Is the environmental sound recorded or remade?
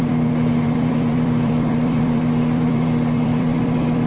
remade